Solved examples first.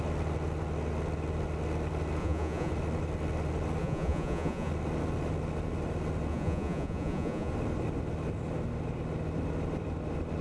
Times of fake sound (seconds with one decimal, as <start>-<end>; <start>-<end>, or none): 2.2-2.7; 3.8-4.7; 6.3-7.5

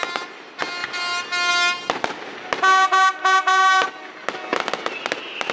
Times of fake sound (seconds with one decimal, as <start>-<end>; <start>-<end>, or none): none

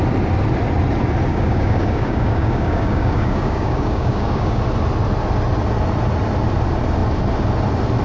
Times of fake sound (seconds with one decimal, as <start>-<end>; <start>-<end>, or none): 1.3-4.6